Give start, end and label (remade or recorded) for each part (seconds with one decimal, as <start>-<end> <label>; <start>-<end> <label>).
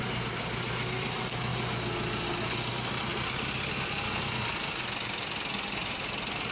0.0-3.1 recorded; 3.1-3.7 remade; 3.7-6.5 recorded